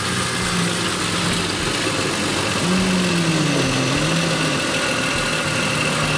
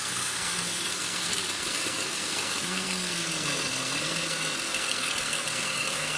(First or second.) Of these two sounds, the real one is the first